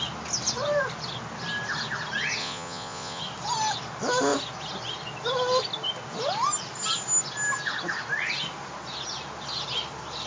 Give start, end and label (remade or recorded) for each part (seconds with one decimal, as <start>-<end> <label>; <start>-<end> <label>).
0.0-2.4 recorded; 2.4-3.2 remade; 3.2-10.3 recorded